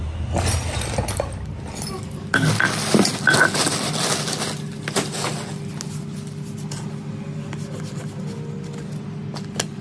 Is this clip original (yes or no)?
yes